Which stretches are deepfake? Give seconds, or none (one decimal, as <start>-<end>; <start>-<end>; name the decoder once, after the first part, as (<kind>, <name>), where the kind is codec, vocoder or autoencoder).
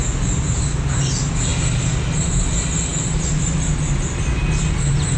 none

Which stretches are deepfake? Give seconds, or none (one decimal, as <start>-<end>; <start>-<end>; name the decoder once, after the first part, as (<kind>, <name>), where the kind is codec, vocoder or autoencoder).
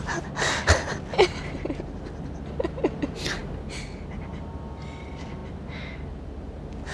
none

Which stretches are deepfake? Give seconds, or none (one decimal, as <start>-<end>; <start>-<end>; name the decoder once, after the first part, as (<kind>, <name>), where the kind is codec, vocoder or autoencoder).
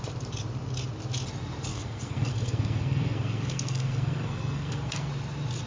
1.7-5.1 (codec, SNAC)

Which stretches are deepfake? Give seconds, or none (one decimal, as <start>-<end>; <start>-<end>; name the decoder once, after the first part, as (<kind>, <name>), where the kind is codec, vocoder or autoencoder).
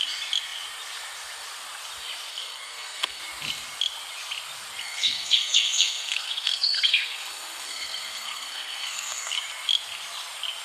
2.3-3.2 (codec, SNAC); 4.8-9.4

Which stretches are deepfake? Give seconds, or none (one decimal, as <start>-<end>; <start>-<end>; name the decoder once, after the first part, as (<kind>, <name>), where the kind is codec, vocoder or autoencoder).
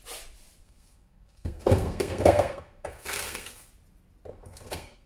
0.6-3.7 (codec, SNAC); 4.3-5.1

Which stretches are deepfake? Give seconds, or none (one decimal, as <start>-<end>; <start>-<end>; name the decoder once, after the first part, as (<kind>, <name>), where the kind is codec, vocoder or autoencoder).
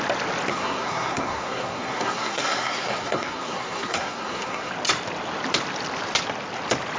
0.5-4.7 (codec, SNAC)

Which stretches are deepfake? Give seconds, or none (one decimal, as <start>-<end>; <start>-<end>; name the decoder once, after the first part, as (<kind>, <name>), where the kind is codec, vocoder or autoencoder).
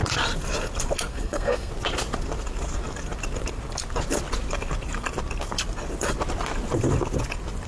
1.1-1.7 (codec, SNAC)